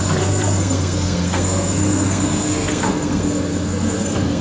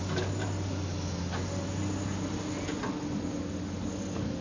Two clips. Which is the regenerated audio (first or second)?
first